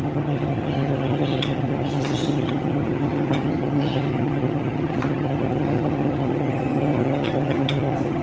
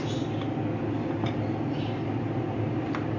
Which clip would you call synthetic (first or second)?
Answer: first